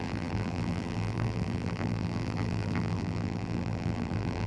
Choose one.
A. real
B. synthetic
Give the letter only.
B